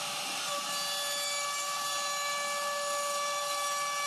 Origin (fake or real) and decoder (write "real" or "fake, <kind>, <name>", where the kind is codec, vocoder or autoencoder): real